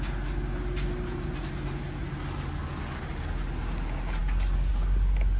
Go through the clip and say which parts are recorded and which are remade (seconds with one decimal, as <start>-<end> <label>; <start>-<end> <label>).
0.0-5.4 recorded